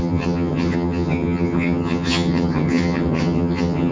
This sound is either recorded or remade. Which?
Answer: remade